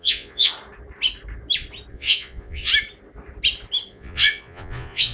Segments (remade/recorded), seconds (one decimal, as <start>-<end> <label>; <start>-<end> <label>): 0.0-0.5 remade; 0.5-1.9 recorded; 1.9-2.7 remade; 2.7-3.9 recorded; 3.9-5.1 remade